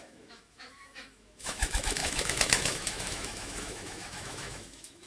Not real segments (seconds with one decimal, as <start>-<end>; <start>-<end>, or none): 0.0-5.1